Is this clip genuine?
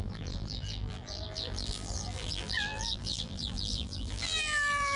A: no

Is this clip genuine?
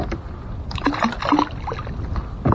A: yes